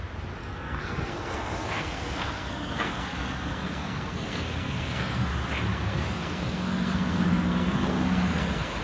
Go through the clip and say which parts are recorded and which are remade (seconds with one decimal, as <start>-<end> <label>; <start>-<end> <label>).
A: 0.0-0.4 recorded; 0.4-5.3 remade; 5.3-5.7 recorded; 5.7-8.8 remade